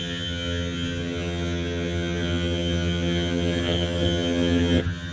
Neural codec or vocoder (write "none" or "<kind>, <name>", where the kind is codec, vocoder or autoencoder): vocoder, HiFi-GAN